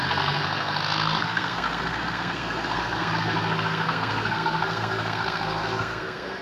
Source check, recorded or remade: remade